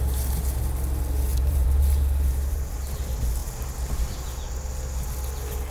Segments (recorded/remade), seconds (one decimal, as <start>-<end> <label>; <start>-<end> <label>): 0.0-1.3 recorded; 1.3-3.0 remade; 3.0-5.7 recorded